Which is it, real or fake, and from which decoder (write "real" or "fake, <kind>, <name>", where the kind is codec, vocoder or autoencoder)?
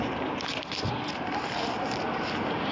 real